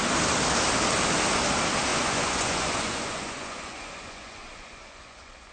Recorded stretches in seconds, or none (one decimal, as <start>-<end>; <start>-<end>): 0.0-1.9